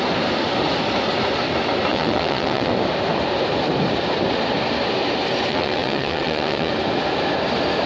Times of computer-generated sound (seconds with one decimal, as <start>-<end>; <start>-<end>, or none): 1.9-2.7; 5.5-6.7